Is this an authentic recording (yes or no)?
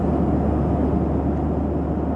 yes